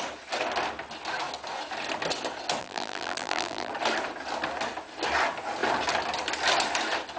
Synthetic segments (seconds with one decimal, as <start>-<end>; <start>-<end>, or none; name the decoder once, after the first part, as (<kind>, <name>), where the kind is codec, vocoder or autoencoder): 2.6-3.7 (vocoder, BigVGAN v2)